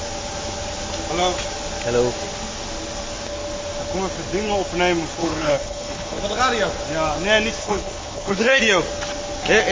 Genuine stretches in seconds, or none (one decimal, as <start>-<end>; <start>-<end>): 0.0-5.2; 6.2-7.6; 8.6-9.7